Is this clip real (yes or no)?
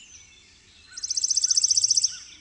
yes